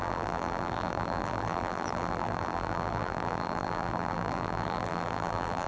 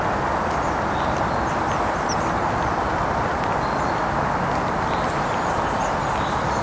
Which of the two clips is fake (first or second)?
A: first